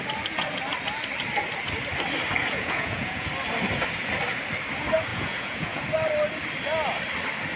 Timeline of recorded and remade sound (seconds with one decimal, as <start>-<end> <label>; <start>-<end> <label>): 0.0-2.4 recorded; 2.4-3.3 remade; 3.3-5.1 recorded; 5.1-5.8 remade; 5.8-7.6 recorded